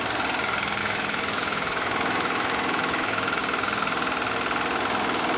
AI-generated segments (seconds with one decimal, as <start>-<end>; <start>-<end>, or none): 0.8-3.4